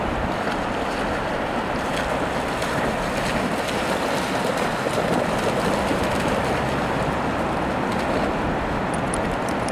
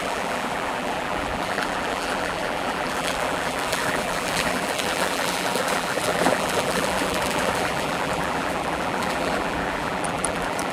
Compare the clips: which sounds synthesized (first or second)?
second